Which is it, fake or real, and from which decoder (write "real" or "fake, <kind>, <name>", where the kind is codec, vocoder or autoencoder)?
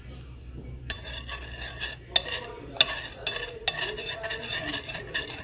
real